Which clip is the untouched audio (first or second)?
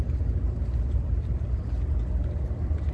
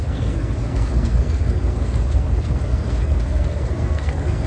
first